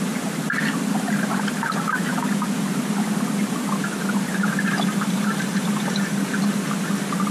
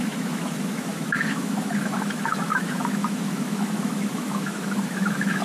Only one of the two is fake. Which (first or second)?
second